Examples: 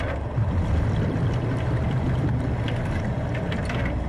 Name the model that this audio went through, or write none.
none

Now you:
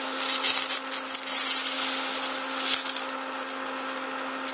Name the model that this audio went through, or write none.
none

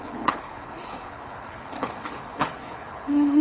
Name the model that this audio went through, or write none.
codec, HILCodec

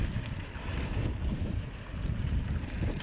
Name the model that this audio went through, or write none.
none